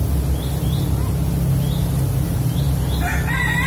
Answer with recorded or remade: recorded